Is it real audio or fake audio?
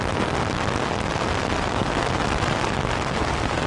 real